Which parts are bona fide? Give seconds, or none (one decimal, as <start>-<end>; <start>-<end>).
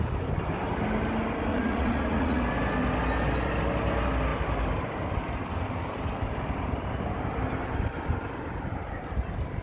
0.0-1.5; 2.4-9.6